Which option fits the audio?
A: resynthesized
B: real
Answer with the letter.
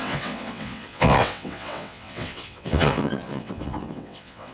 A